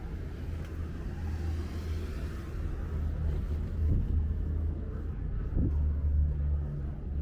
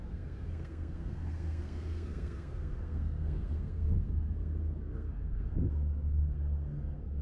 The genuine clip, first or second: first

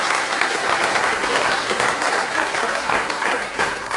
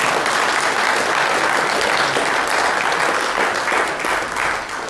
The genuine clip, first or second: second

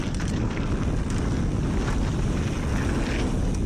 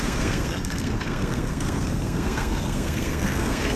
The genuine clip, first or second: first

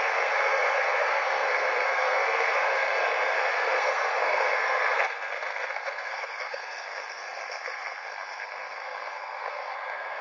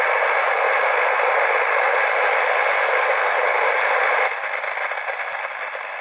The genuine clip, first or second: second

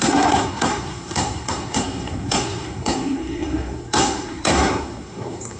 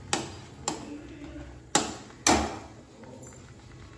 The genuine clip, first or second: second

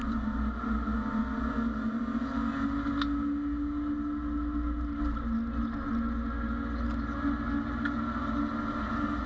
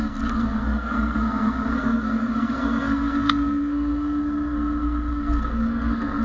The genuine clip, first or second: first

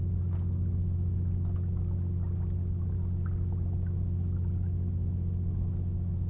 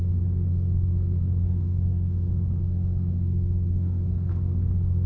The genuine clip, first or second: first